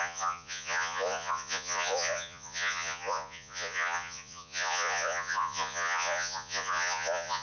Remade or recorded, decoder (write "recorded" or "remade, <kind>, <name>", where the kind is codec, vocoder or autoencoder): remade, vocoder, Vocos